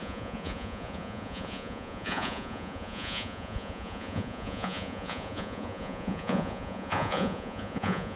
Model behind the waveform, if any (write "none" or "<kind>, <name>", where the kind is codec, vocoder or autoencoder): vocoder, Vocos